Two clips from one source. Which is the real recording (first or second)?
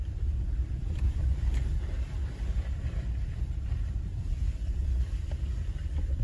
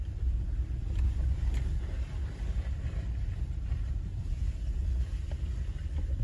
second